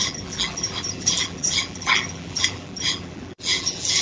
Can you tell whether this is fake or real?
fake